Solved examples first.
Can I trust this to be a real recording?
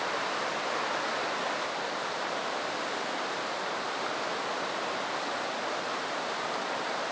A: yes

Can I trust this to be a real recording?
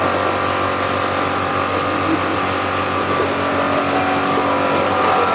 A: yes